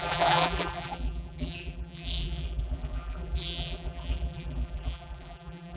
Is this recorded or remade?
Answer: remade